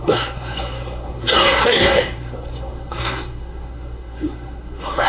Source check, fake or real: fake